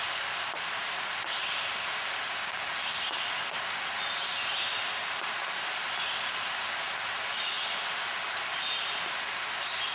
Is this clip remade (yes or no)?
no